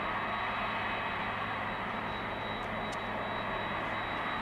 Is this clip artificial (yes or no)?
no